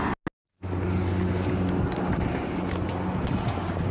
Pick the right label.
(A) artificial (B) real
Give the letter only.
B